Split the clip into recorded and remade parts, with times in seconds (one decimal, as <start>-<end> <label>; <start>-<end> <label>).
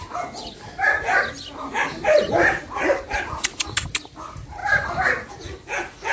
0.0-0.6 remade; 0.6-1.7 recorded; 1.7-3.9 remade; 3.9-4.6 recorded; 4.6-5.3 remade; 5.3-6.1 recorded